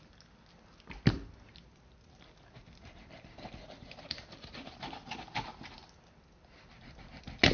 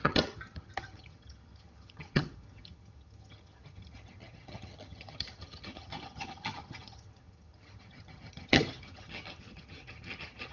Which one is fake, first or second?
second